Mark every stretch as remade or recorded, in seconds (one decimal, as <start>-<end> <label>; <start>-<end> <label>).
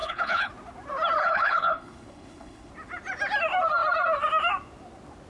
0.0-0.5 remade; 0.5-1.2 recorded; 1.2-2.7 remade; 2.7-5.3 recorded